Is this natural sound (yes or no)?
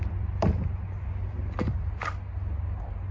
yes